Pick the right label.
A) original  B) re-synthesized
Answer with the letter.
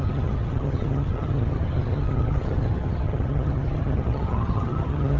B